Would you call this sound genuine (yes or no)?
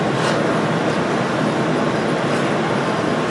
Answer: yes